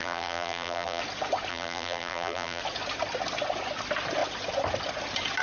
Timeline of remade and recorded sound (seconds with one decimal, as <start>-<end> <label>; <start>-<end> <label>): 0.0-1.0 remade; 1.0-1.5 recorded; 1.5-2.6 remade; 2.6-5.4 recorded